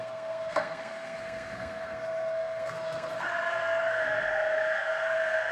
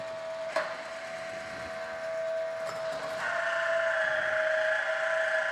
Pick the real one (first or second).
second